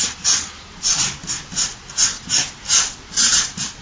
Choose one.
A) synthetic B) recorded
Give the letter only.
B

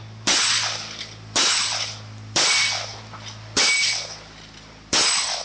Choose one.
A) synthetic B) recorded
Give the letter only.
B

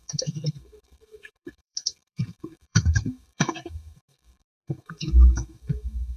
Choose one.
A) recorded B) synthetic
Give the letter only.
B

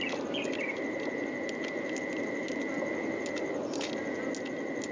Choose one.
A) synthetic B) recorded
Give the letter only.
B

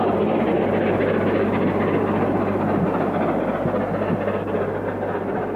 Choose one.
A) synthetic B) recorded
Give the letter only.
B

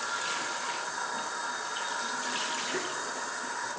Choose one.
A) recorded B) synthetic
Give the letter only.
A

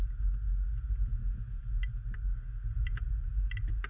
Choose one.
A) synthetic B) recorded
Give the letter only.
B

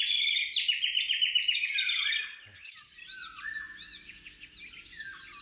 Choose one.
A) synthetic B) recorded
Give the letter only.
B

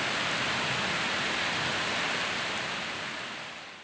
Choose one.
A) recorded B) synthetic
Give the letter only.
A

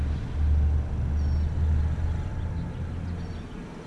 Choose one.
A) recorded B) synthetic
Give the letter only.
A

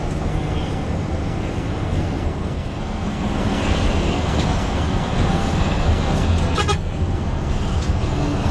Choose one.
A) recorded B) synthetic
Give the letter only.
B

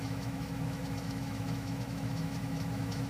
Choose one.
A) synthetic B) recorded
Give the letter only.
A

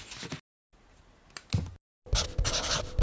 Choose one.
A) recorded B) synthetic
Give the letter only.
A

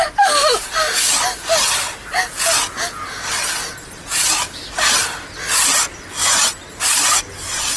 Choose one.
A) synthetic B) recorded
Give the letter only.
B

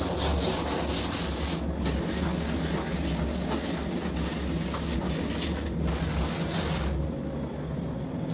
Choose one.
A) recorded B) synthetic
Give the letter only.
A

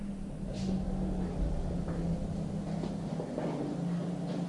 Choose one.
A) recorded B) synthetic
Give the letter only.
A